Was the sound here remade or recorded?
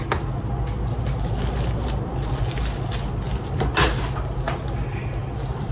recorded